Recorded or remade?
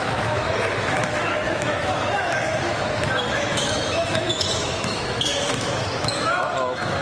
remade